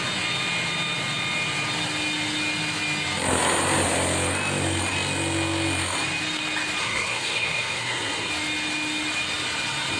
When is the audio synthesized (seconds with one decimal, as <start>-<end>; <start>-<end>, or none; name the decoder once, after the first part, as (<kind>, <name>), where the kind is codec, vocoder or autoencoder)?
6.8-8.3 (codec, SNAC)